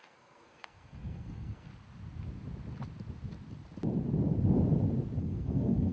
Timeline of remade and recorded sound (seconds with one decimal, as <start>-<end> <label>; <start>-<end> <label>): 0.0-1.7 remade; 1.7-5.2 recorded; 5.2-5.9 remade